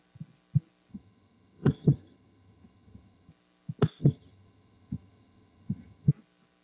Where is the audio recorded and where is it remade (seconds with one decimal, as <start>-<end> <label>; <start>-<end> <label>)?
0.0-0.9 recorded; 0.9-3.3 remade; 3.3-4.0 recorded; 4.0-6.1 remade; 6.1-6.6 recorded